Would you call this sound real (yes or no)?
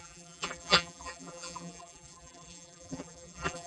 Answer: no